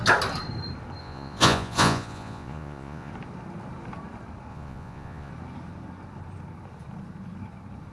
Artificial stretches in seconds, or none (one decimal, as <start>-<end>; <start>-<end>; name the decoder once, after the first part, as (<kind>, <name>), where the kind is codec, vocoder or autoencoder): 1.0-3.1 (vocoder, Vocos); 4.5-5.3